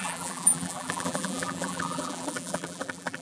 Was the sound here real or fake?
fake